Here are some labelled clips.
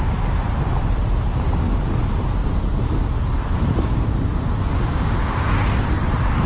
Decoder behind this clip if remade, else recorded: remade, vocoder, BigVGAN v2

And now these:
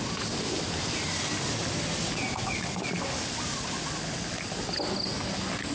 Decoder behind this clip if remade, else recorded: recorded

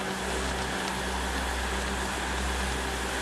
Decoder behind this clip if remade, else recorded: recorded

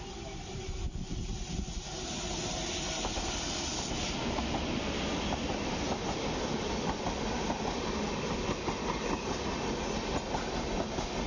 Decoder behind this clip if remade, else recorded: recorded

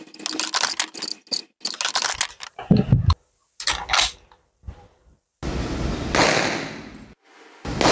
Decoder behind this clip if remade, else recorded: recorded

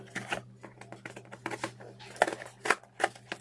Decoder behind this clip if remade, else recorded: recorded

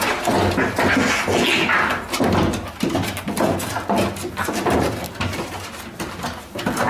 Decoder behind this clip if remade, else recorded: recorded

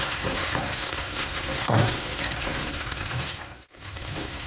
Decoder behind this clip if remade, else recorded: remade, codec, SNAC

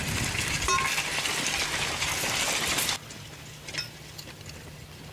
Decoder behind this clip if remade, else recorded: recorded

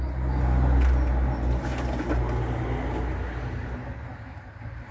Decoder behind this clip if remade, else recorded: recorded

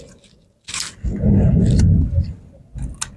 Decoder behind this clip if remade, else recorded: recorded